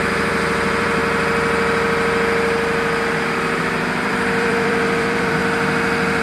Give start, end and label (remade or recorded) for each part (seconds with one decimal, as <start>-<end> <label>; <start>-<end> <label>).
0.0-1.0 remade; 1.0-3.6 recorded; 3.6-5.4 remade; 5.4-6.2 recorded